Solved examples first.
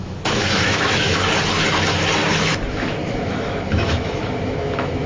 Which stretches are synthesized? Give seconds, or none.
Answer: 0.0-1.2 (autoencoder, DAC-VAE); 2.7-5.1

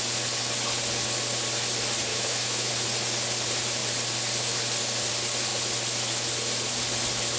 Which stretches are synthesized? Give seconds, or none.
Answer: 2.1-2.7 (autoencoder, DAC-VAE)

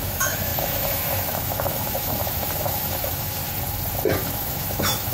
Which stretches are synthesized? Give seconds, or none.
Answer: 0.0-3.4 (autoencoder, DAC-VAE); 4.1-5.1

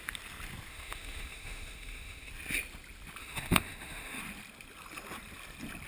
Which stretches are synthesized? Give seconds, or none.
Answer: 0.7-2.3 (autoencoder, DAC-VAE); 3.2-4.2

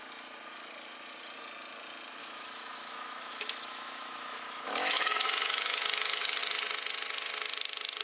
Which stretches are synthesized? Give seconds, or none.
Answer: 2.2-6.4 (autoencoder, DAC-VAE)

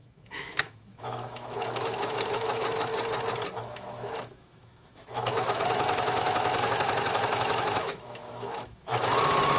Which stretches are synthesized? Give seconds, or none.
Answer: 0.0-2.9 (autoencoder, DAC-VAE); 3.6-9.6

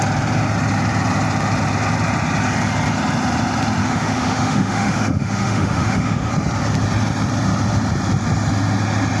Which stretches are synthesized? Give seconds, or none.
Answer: 3.8-6.3 (autoencoder, DAC-VAE)